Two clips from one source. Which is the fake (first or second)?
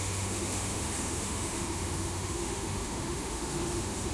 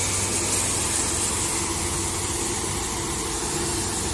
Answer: first